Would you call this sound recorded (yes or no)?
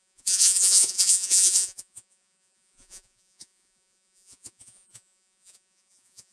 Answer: no